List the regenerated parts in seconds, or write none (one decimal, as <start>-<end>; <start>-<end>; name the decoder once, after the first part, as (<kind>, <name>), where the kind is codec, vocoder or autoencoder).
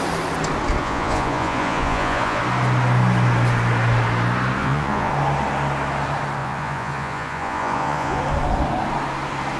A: 0.8-2.4 (vocoder, Vocos); 4.6-5.1; 6.4-8.2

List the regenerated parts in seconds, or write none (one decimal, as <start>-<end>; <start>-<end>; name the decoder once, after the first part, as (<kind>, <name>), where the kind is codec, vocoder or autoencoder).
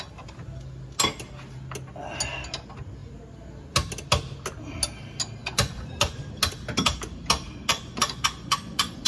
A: 5.4-6.2 (vocoder, Vocos); 7.7-9.1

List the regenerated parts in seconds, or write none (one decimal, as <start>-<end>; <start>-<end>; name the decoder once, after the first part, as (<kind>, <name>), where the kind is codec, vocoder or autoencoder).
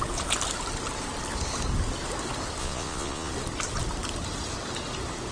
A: 2.6-3.3 (vocoder, Vocos)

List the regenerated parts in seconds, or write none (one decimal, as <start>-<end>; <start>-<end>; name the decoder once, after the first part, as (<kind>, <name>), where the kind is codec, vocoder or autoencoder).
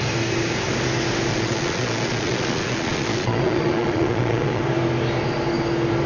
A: 1.3-4.6 (vocoder, Vocos)